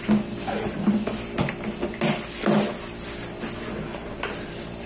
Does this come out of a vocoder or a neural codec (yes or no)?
no